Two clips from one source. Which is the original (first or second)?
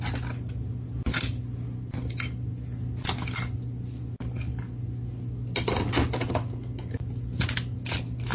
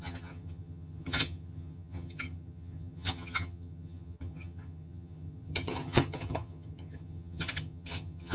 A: first